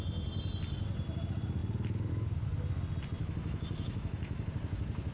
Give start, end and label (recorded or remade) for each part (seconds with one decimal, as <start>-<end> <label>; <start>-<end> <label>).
0.0-3.2 recorded; 3.2-4.5 remade; 4.5-5.1 recorded